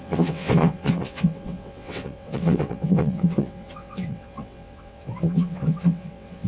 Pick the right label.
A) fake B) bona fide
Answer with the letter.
A